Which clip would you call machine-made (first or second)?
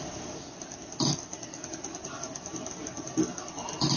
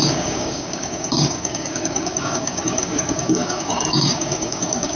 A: second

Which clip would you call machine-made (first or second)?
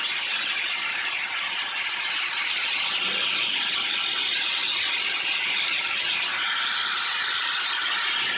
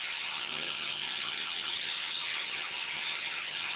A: second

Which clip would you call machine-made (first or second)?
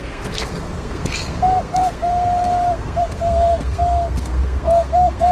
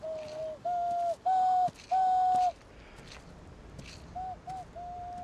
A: first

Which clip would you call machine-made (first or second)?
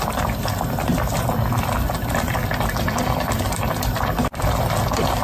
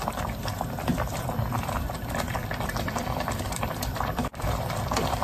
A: second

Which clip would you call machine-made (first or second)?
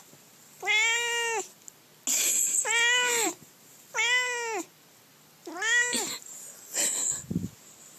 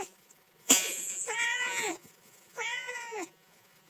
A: second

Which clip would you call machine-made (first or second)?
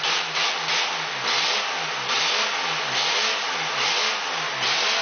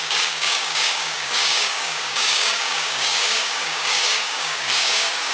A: second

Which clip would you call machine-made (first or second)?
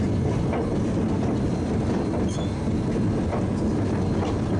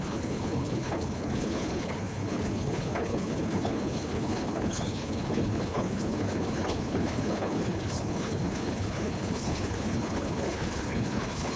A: second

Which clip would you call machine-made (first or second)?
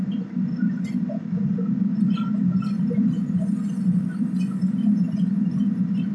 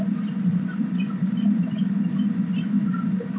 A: second